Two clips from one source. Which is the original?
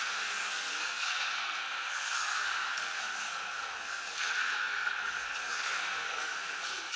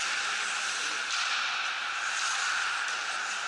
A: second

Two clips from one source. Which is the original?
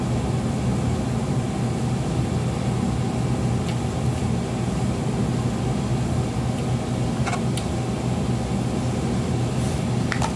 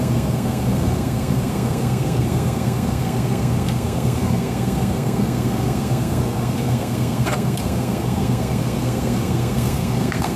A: first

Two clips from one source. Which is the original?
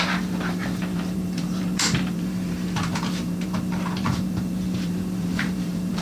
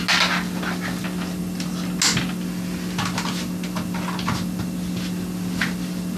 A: second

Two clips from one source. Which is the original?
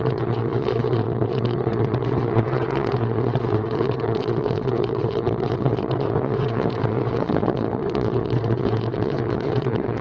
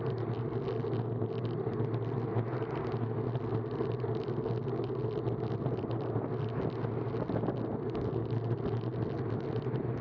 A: second